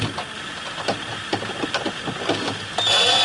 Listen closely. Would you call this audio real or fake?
real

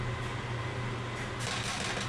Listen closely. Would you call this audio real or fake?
real